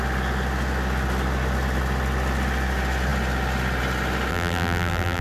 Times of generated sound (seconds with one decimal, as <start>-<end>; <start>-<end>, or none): 4.3-5.2